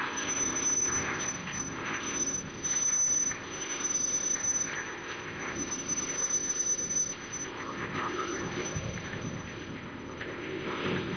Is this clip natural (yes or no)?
no